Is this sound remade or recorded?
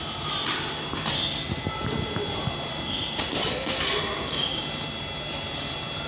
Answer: recorded